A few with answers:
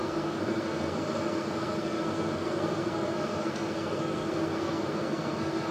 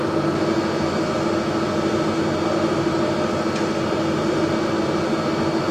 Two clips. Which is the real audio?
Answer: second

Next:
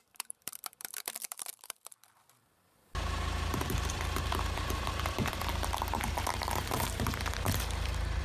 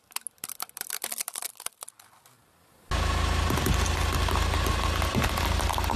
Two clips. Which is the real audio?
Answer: second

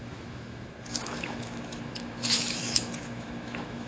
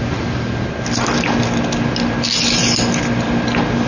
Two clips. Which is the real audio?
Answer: second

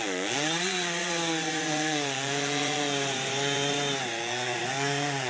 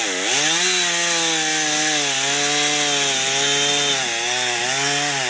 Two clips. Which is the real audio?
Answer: second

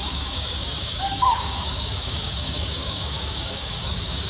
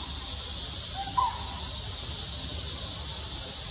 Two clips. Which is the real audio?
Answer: second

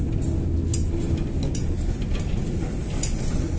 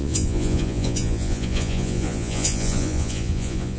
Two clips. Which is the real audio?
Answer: first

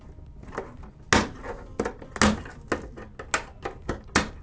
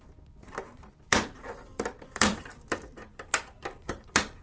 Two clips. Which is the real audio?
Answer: first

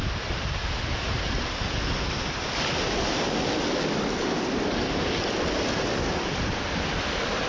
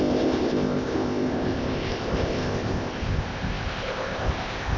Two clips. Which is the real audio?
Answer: first